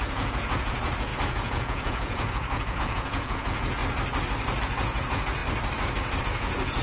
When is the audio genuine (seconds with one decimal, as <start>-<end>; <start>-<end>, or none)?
3.8-4.6; 5.4-6.2